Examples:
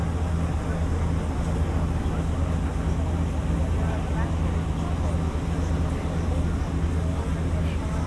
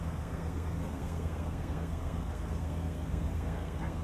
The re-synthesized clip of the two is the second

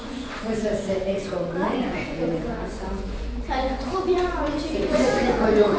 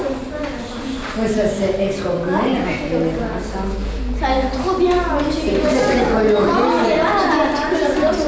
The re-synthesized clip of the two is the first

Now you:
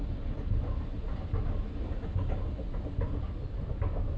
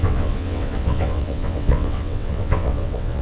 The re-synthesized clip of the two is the second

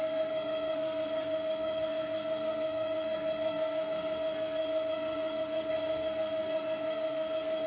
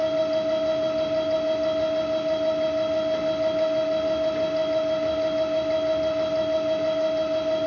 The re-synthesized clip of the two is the first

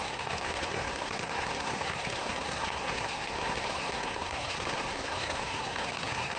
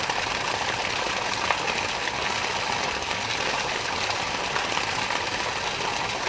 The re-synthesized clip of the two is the first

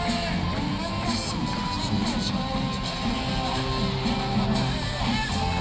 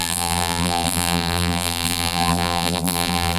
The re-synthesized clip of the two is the second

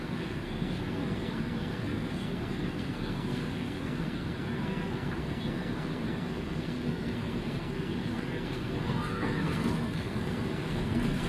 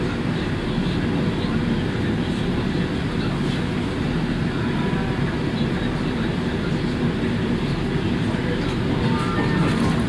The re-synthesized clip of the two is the first